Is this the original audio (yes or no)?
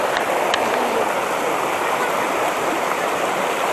yes